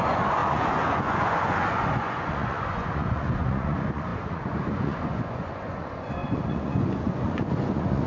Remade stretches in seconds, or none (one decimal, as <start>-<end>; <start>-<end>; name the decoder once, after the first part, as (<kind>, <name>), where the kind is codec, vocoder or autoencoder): 0.0-8.1 (vocoder, Vocos)